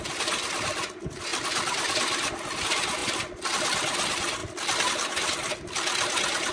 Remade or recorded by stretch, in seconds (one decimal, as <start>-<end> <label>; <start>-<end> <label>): 0.0-6.5 recorded